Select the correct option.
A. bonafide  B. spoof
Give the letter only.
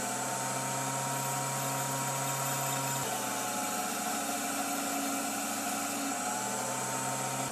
A